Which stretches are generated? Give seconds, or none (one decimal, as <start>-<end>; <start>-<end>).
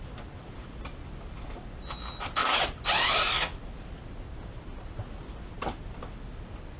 none